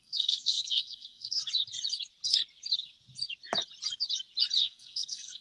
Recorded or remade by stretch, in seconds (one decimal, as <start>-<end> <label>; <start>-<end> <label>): 0.0-1.4 remade; 1.4-4.6 recorded; 4.6-5.4 remade